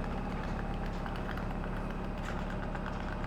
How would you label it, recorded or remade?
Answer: recorded